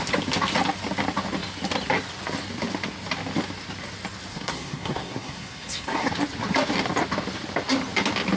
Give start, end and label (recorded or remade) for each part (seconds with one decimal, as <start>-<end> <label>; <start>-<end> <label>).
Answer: 0.0-4.3 recorded; 4.3-6.1 remade; 6.1-8.4 recorded